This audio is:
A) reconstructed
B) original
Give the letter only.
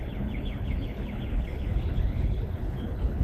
A